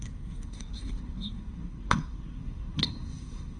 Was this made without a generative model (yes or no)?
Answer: no